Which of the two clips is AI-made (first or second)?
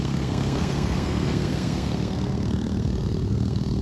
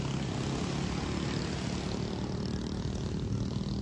first